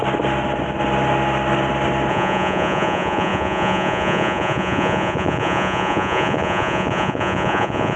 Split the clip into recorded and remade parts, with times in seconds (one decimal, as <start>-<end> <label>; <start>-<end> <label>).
0.0-2.1 recorded; 2.1-8.0 remade